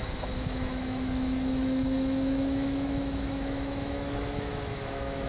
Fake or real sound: fake